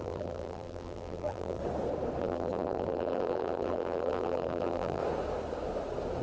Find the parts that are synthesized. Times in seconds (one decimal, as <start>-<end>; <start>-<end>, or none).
0.0-1.6; 2.2-5.0